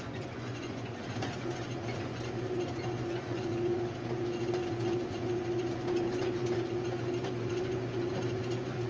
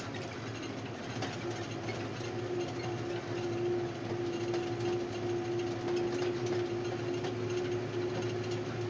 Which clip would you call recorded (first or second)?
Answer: second